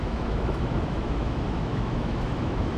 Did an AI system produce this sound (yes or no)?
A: yes